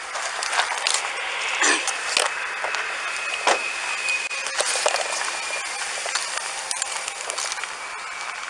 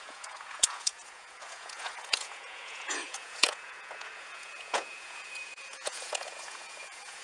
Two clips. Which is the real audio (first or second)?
first